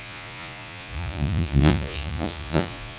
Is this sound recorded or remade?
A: remade